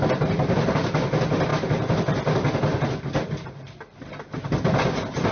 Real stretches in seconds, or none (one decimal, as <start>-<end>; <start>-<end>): 0.0-5.3